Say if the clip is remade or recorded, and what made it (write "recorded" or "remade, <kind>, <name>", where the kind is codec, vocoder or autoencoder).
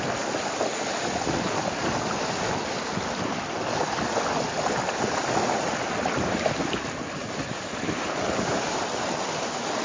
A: recorded